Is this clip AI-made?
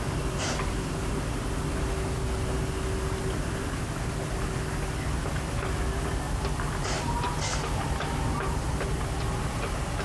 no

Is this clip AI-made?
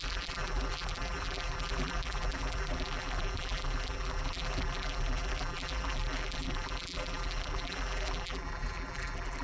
yes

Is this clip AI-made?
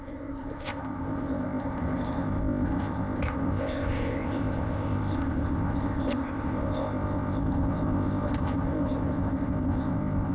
yes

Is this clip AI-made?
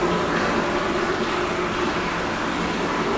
yes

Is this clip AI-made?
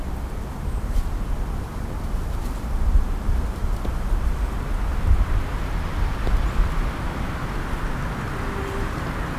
no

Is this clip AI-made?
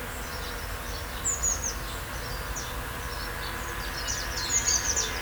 no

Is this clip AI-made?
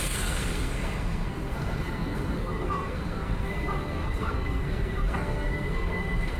yes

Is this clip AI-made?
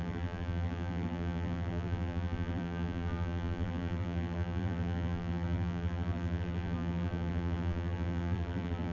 yes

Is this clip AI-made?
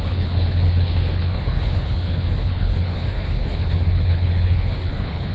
yes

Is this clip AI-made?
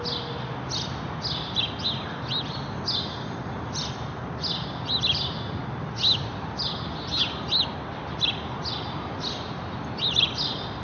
no